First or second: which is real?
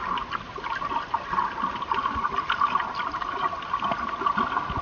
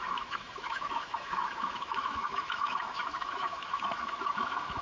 first